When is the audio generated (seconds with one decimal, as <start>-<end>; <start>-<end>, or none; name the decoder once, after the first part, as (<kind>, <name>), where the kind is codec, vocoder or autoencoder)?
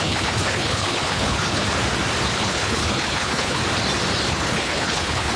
0.0-1.6 (codec, HILCodec); 2.4-3.6; 4.3-5.4